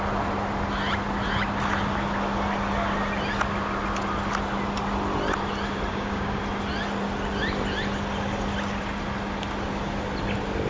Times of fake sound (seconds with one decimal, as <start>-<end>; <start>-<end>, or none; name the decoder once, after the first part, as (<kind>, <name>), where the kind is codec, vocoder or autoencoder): 5.9-6.4 (codec, DAC)